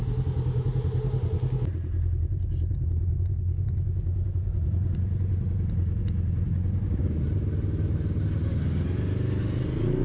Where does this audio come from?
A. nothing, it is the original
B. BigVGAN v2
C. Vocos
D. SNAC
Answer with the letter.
A